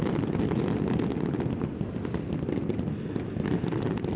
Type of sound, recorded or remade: recorded